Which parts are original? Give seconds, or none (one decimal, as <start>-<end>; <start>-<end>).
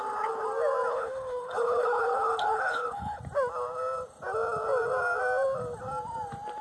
0.0-0.9; 3.2-6.6